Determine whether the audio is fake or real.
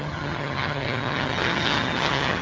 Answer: fake